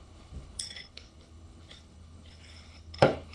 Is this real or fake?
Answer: fake